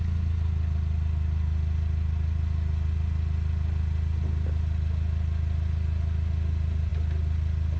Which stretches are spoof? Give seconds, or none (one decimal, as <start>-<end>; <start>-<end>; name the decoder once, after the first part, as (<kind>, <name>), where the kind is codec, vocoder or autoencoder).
none